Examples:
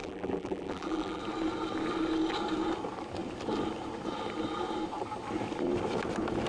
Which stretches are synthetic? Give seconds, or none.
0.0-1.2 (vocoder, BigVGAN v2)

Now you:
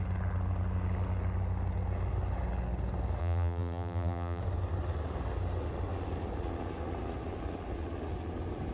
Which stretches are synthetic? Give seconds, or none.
3.2-4.4 (vocoder, BigVGAN v2)

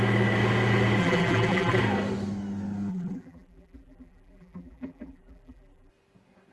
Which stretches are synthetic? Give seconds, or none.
1.0-1.8 (vocoder, BigVGAN v2); 2.9-5.9

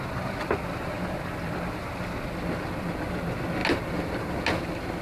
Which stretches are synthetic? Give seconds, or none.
none

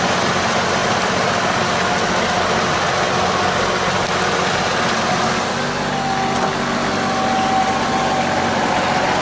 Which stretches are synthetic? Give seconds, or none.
none

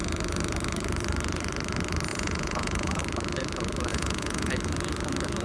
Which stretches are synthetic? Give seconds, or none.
2.1-3.0 (vocoder, Vocos); 3.9-4.5

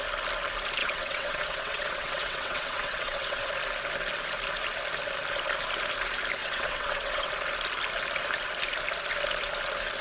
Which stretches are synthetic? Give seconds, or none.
0.8-3.5 (vocoder, WaveNeXt); 6.4-7.3